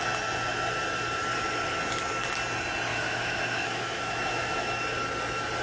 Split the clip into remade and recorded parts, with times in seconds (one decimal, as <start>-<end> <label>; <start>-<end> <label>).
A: 0.0-2.9 recorded; 2.9-4.7 remade; 4.7-5.6 recorded